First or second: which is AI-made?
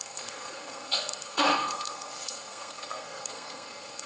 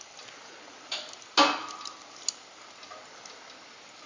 first